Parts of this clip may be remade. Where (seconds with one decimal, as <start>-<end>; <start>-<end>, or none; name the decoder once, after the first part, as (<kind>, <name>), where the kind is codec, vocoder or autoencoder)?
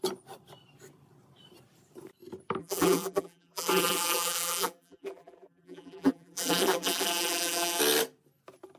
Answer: 2.6-7.8 (vocoder, BigVGAN v2)